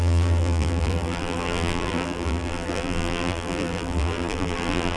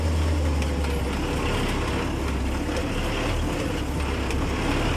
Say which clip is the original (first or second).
second